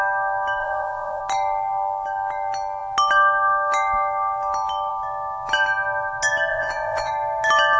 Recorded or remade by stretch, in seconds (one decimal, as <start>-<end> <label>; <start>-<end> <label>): 0.0-0.6 recorded; 0.6-1.2 remade; 1.2-6.5 recorded; 6.5-7.1 remade; 7.1-7.8 recorded